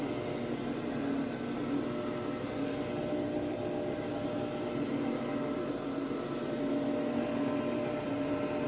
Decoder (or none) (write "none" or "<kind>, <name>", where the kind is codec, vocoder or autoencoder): none